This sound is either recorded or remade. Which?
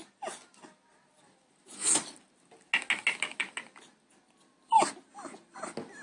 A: recorded